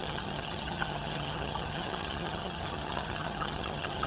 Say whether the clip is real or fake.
fake